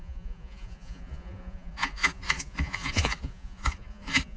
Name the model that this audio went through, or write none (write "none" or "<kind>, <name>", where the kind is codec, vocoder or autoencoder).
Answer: vocoder, Vocos